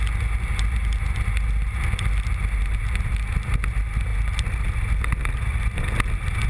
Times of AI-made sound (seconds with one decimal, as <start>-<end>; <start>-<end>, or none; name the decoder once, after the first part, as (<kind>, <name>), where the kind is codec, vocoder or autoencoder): none